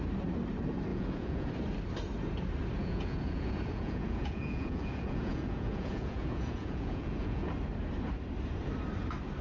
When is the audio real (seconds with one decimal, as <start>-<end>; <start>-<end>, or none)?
0.0-0.9; 1.5-2.8; 7.5-9.4